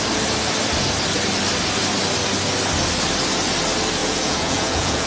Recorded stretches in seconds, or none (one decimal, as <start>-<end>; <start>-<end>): 0.0-4.0